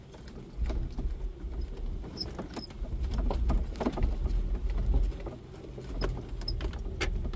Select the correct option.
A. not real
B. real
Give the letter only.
B